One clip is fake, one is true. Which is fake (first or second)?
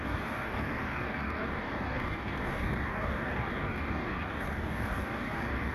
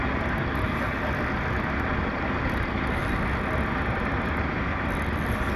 first